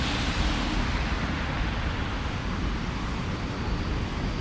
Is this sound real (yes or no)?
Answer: yes